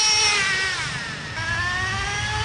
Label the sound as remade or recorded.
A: recorded